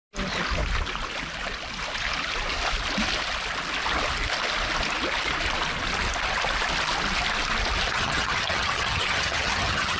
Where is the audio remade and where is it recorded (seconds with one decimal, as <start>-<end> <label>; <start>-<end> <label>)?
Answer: 0.0-7.9 recorded; 7.9-10.0 remade